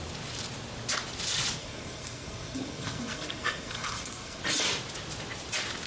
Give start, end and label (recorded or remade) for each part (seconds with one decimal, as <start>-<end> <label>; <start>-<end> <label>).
0.0-1.6 recorded; 1.6-4.4 remade; 4.4-5.9 recorded